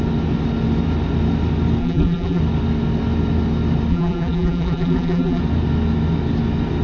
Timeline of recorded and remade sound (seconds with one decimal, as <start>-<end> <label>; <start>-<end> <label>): 0.0-1.8 recorded; 1.8-2.4 remade; 2.4-3.9 recorded; 3.9-5.4 remade; 5.4-6.8 recorded